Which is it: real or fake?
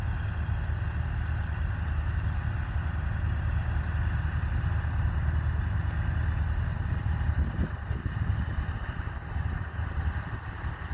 real